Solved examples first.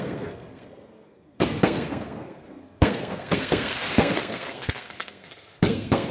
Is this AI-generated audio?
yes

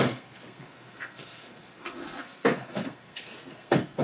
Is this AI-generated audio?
yes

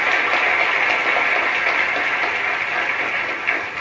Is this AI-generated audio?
no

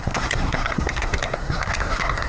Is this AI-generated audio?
yes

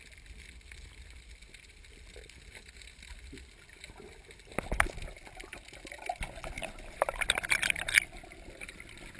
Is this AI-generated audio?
no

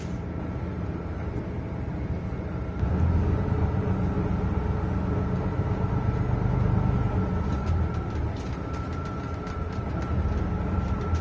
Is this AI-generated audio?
no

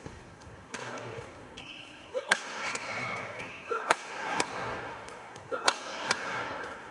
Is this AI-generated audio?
yes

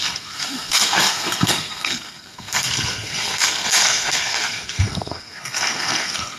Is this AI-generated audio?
yes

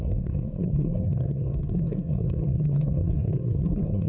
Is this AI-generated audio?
yes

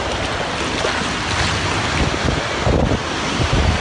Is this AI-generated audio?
no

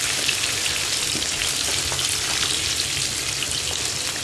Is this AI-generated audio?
no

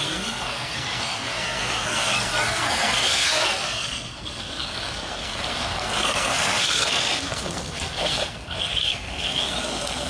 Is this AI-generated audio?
yes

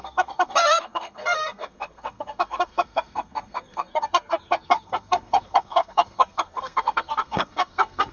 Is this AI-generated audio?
yes